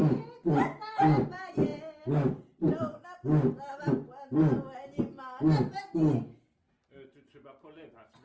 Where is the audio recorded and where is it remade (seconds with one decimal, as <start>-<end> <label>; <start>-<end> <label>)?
0.0-8.2 recorded